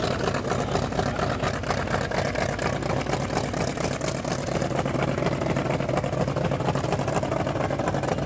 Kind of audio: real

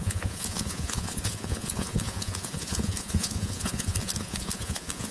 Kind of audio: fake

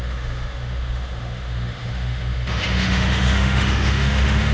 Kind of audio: fake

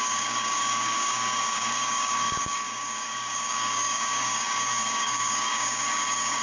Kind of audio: fake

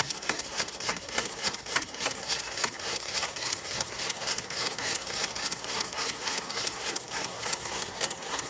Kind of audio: fake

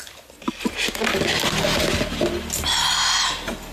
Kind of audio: real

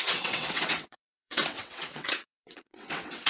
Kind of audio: fake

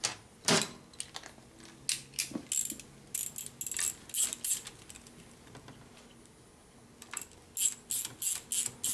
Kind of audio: real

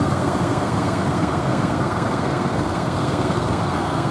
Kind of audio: fake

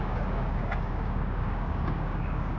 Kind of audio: fake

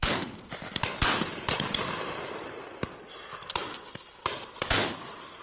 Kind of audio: fake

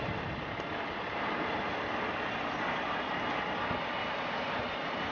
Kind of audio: real